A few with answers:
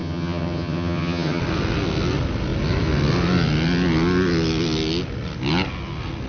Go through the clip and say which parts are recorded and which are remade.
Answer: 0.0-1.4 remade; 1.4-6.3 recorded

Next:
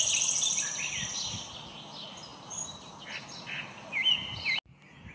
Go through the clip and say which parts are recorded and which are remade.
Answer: 0.0-5.1 recorded

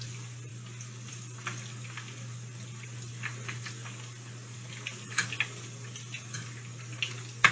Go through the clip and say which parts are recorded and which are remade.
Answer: 0.0-7.5 recorded

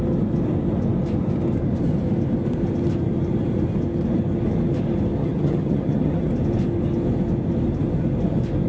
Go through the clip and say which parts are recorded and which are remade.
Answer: 0.0-5.2 recorded; 5.2-6.3 remade; 6.3-8.7 recorded